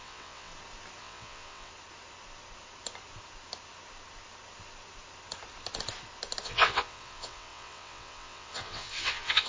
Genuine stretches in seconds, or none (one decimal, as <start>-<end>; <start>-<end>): 0.5-1.0; 1.7-6.4